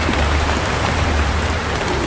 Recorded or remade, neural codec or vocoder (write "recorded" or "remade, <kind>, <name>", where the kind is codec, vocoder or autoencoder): remade, vocoder, BigVGAN v2